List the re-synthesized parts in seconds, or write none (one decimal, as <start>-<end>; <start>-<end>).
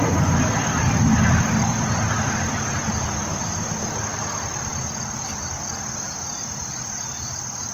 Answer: none